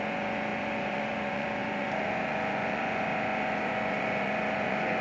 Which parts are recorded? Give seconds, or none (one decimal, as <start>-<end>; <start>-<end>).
none